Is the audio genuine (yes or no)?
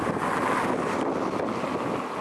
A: yes